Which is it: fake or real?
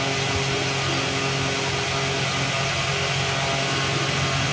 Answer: real